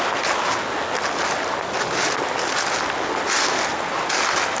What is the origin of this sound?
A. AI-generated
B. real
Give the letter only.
B